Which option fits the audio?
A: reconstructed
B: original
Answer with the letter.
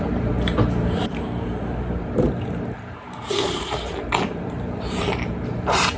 A